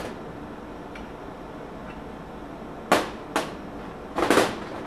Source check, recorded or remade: recorded